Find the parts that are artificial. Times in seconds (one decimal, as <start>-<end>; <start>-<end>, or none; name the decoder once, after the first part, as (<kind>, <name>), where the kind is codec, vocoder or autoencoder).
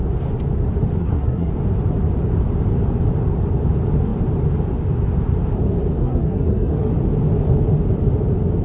1.0-1.5 (codec, SNAC); 6.0-6.9